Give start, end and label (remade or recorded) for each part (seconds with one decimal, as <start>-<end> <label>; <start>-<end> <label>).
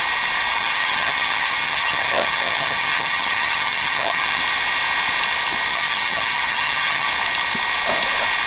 0.0-0.5 recorded; 0.5-4.4 remade; 4.4-5.7 recorded; 5.7-7.1 remade; 7.1-8.5 recorded